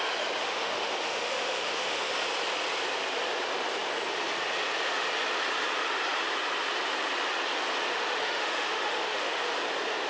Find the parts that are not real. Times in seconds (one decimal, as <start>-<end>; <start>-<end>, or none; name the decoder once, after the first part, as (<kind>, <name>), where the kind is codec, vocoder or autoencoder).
0.4-2.1 (autoencoder, DAC-VAE); 7.9-9.4